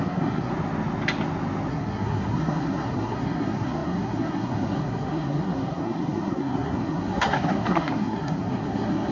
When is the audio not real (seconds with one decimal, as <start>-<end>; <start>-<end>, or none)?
0.0-0.5; 1.7-9.1